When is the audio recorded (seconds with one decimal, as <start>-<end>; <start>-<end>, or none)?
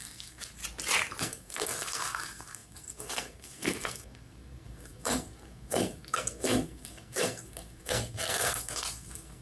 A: 0.6-1.2